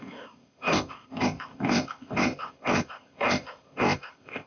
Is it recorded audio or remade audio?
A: remade